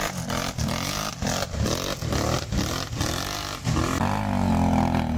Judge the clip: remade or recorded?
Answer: recorded